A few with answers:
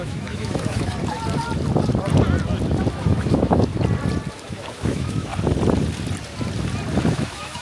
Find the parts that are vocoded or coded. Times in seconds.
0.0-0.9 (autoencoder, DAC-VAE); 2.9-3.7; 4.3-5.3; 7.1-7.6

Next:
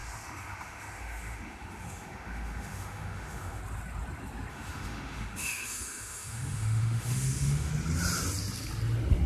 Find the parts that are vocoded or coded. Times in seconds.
0.0-3.6 (autoencoder, DAC-VAE); 4.5-7.7

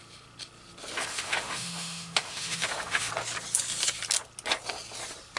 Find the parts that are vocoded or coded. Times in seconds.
1.1-3.1 (autoencoder, DAC-VAE)

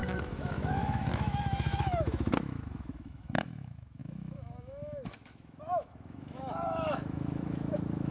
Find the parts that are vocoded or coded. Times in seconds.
0.0-8.1 (autoencoder, DAC-VAE)